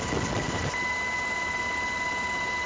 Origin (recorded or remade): recorded